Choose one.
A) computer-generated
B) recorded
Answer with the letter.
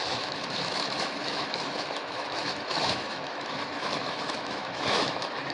A